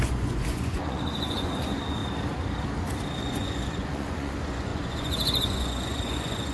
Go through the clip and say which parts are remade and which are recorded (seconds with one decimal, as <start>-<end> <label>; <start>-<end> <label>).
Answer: 0.0-2.0 remade; 2.0-3.2 recorded; 3.2-6.5 remade